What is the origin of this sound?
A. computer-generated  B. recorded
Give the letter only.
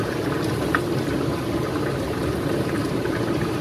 A